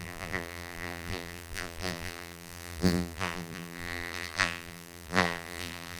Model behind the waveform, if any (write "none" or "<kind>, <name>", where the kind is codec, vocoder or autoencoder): vocoder, BigVGAN v2